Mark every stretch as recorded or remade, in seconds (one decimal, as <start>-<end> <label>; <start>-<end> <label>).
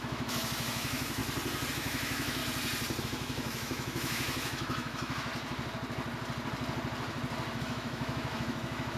0.0-1.2 remade; 1.2-1.7 recorded; 1.7-2.4 remade; 2.4-3.0 recorded; 3.0-5.3 remade; 5.3-7.6 recorded; 7.6-9.0 remade